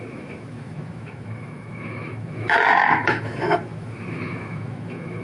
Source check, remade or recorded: remade